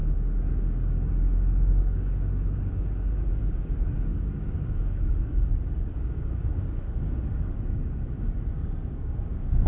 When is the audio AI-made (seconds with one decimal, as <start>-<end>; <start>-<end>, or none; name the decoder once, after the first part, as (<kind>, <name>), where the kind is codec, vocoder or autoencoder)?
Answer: 0.0-9.7 (codec, DAC)